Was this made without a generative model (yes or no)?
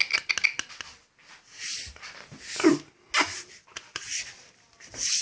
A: yes